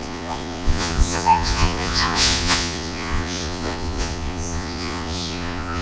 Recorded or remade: remade